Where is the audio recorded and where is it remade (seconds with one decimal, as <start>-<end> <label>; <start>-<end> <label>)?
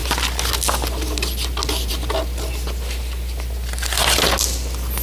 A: 0.0-5.0 recorded